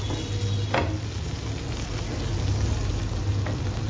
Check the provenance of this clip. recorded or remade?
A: recorded